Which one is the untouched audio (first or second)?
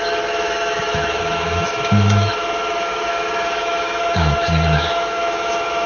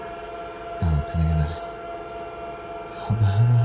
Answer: second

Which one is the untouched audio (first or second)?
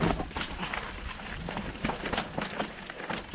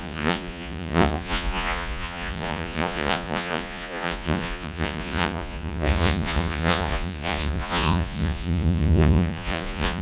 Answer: first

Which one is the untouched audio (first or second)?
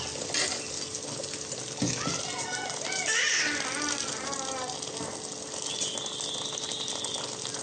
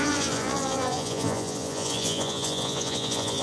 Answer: first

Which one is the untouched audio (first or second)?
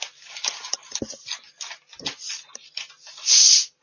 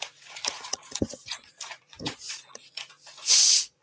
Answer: first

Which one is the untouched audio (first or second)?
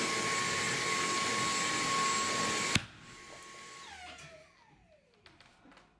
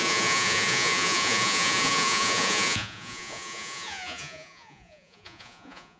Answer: first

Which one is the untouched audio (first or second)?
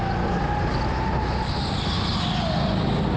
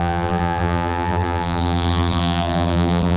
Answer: first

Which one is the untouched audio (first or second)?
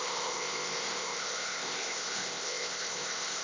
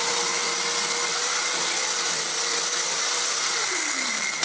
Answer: second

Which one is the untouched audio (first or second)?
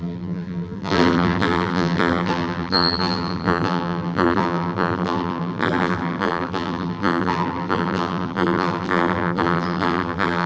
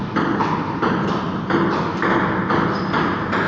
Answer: second